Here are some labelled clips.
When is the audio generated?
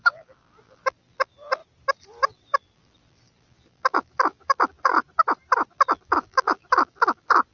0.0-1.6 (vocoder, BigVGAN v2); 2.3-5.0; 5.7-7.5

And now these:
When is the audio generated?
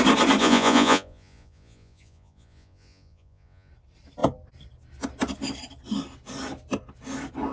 0.4-3.7 (vocoder, Vocos)